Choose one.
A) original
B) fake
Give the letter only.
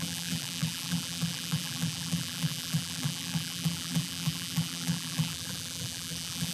B